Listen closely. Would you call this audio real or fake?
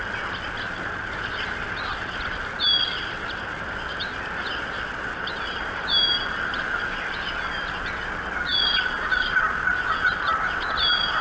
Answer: real